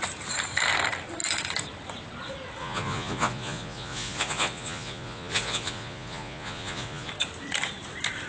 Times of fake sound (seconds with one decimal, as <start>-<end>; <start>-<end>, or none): 2.6-7.1